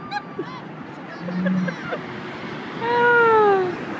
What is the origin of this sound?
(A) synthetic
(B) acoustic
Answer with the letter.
B